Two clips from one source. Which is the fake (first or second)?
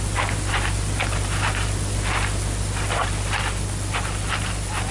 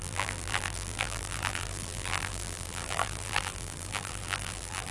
second